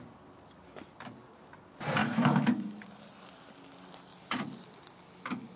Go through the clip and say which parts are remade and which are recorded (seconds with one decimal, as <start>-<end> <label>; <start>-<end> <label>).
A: 0.0-2.0 recorded; 2.0-2.8 remade; 2.8-5.6 recorded